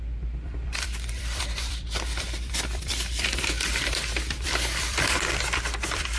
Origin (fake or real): fake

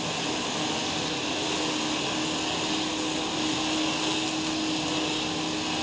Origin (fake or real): real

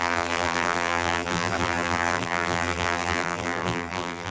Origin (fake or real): fake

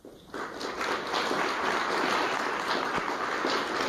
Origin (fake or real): real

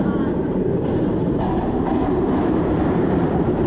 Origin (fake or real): fake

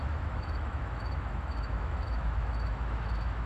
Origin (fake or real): fake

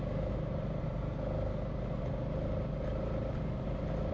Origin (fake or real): real